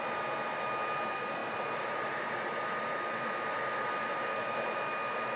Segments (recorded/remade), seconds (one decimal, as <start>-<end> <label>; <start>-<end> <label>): 0.0-1.4 recorded; 1.4-4.6 remade; 4.6-5.4 recorded